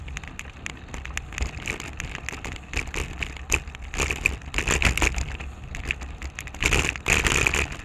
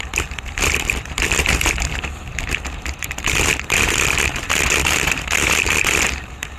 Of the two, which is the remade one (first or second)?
second